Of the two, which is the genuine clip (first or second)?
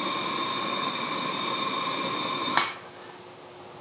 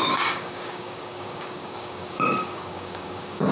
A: first